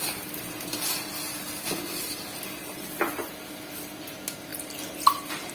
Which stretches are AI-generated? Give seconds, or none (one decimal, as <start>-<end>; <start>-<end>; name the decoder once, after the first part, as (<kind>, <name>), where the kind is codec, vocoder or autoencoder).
none